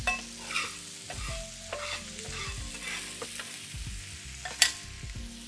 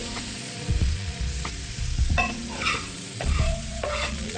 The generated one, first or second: second